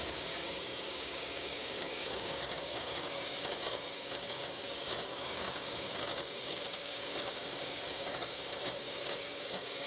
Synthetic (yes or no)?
yes